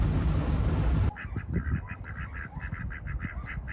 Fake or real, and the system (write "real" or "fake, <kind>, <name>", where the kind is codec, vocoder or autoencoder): real